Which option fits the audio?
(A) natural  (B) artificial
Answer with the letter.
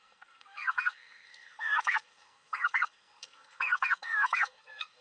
B